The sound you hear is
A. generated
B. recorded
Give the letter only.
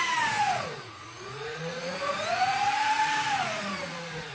A